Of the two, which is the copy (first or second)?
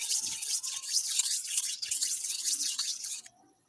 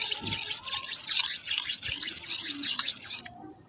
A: first